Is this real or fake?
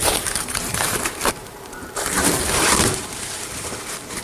fake